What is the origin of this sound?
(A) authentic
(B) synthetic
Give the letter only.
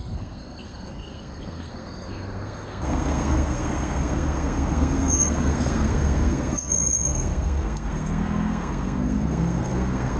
B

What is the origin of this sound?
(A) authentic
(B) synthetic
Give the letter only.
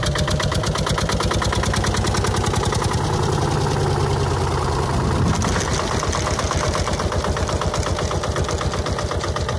A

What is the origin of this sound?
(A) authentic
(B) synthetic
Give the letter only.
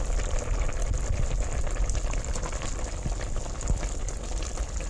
A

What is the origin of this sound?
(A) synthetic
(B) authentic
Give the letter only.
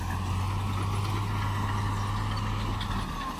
B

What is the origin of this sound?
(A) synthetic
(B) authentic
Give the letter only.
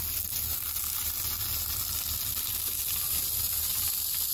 B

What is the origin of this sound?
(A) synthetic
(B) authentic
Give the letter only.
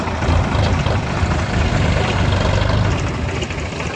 B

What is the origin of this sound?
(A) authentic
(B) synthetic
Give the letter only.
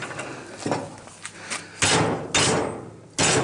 A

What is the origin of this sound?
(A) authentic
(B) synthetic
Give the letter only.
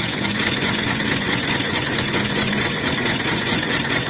B